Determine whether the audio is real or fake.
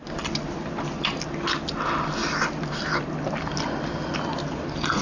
real